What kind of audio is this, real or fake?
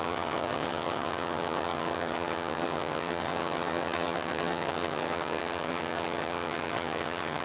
fake